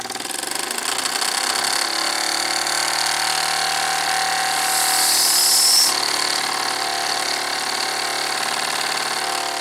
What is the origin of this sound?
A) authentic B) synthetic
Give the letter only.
A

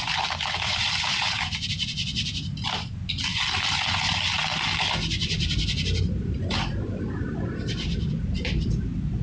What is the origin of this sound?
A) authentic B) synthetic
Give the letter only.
B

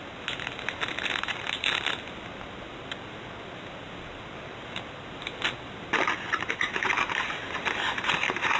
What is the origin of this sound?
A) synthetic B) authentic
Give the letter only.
B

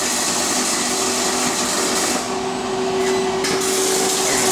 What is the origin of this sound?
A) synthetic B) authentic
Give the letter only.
B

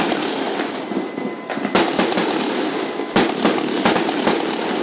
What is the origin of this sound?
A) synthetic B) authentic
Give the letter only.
B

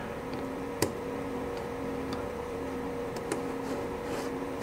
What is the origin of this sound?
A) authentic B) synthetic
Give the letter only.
B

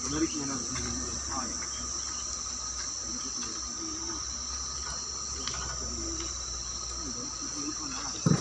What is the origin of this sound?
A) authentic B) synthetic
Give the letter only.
A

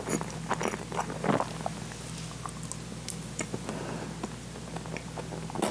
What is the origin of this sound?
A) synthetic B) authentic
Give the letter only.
B